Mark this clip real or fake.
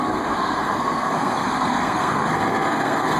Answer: fake